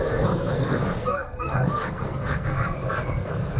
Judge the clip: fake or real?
fake